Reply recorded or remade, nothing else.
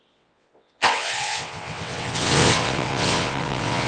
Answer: remade